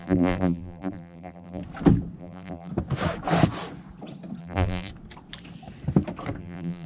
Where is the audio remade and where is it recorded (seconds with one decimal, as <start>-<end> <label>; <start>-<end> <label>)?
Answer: 0.0-1.6 remade; 1.6-2.2 recorded; 2.2-2.7 remade; 2.7-4.4 recorded; 4.4-4.9 remade; 4.9-6.4 recorded; 6.4-6.9 remade